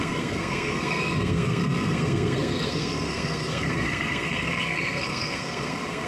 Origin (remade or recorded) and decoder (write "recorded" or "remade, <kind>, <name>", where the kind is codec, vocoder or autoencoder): remade, codec, SNAC